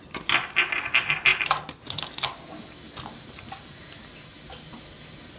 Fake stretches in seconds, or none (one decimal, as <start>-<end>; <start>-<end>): none